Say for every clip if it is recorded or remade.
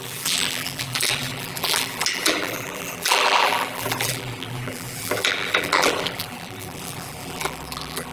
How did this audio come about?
remade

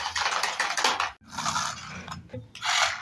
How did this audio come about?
recorded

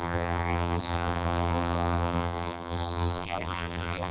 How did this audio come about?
remade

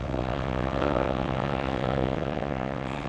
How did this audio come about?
remade